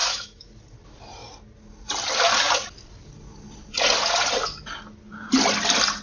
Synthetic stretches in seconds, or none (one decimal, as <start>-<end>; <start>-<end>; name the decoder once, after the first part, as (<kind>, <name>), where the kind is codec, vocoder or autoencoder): 0.0-0.5 (autoencoder, DAC-VAE)